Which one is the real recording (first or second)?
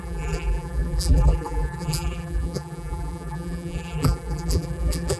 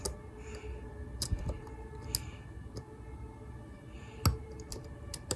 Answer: second